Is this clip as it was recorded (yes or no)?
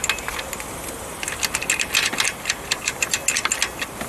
yes